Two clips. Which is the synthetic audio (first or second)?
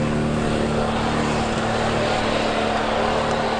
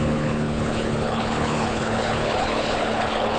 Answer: second